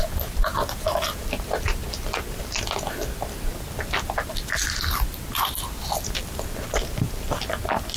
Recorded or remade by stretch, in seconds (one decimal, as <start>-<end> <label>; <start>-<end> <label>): 0.0-8.0 recorded